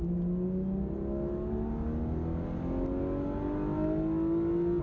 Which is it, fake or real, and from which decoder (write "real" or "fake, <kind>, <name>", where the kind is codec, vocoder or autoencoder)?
real